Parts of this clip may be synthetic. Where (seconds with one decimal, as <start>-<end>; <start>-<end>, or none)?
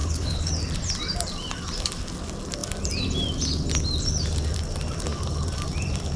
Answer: 0.0-0.5